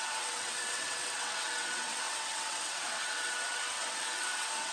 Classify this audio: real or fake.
fake